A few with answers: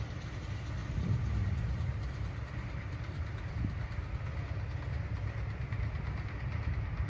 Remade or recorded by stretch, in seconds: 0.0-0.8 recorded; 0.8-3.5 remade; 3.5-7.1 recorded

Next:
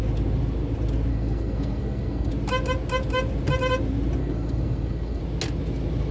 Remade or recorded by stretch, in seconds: 0.0-1.1 recorded; 1.1-2.3 remade; 2.3-4.2 recorded; 4.2-5.2 remade; 5.2-6.1 recorded